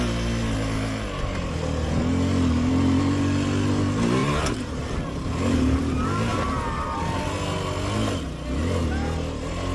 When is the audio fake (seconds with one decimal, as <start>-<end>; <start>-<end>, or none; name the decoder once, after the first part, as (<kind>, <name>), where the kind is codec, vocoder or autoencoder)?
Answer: 4.2-4.8 (vocoder, BigVGAN v2)